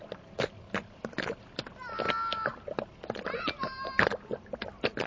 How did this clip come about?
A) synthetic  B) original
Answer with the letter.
B